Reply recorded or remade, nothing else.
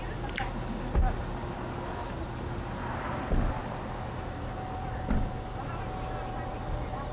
recorded